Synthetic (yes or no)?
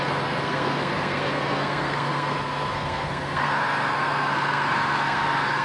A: yes